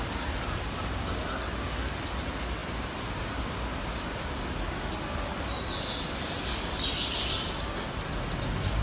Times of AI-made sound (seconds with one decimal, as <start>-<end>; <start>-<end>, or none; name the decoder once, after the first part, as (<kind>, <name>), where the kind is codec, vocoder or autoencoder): none